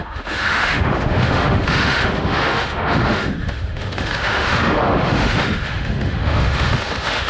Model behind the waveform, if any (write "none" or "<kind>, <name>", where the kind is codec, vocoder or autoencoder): autoencoder, DAC-VAE